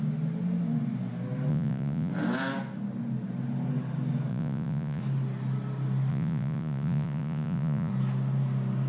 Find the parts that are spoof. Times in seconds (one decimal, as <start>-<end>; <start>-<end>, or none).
1.5-2.1; 4.3-5.0; 6.1-7.9